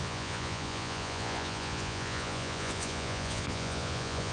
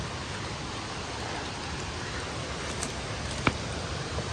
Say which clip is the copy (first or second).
first